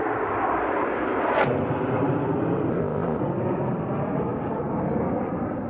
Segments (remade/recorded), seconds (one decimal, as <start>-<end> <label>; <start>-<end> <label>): 0.0-2.7 recorded; 2.7-3.2 remade; 3.2-5.7 recorded